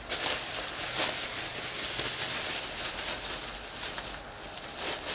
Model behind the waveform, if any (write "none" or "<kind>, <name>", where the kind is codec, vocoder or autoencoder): none